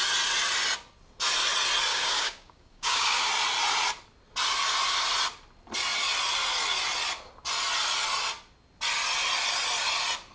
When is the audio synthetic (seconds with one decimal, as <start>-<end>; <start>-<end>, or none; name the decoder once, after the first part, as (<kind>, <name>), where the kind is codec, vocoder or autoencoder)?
1.9-3.3 (codec, DAC)